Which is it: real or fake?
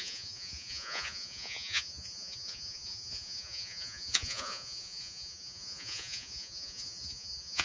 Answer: fake